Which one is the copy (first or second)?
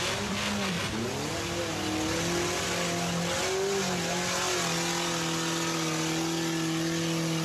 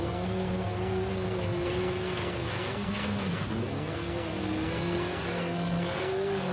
second